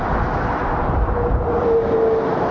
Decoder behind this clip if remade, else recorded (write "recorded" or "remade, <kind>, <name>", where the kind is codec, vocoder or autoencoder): recorded